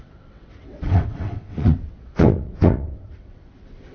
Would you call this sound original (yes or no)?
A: no